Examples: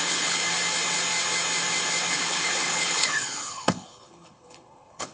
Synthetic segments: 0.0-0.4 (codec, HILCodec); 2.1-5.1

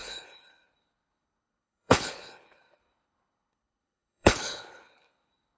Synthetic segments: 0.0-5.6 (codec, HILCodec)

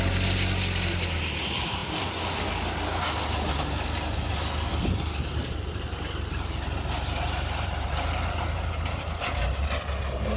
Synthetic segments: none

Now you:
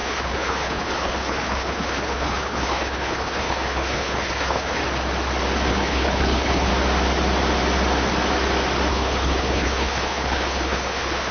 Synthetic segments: 0.0-4.8 (codec, HILCodec); 5.7-6.7; 8.9-11.3

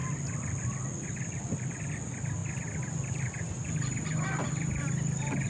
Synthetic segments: none

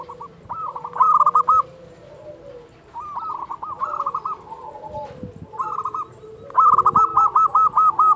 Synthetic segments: none

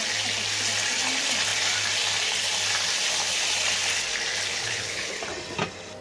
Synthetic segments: 4.5-5.2 (codec, HILCodec)